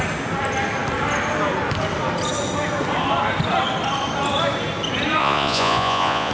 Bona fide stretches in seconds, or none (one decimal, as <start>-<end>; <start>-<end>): 0.0-5.2